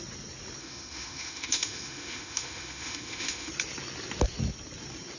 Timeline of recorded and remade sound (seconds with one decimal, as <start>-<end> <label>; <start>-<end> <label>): 0.0-0.6 recorded; 0.6-3.5 remade; 3.5-5.2 recorded